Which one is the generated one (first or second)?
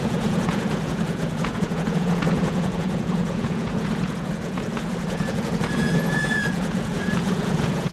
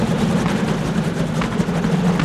first